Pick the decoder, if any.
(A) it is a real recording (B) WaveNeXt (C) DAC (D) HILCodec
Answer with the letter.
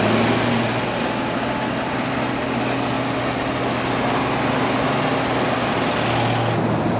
A